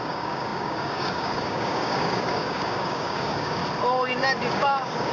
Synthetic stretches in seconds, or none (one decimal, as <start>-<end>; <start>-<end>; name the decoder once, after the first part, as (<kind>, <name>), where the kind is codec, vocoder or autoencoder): 0.0-3.6 (codec, DAC); 4.5-5.1